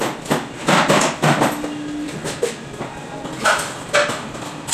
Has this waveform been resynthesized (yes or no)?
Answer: no